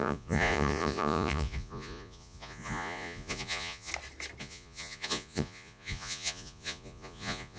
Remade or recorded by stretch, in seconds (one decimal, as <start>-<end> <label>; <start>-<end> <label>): 0.0-3.9 remade; 3.9-4.4 recorded; 4.4-7.6 remade